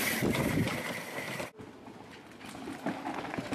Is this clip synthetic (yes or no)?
no